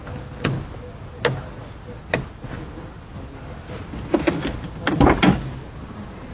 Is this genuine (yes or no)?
yes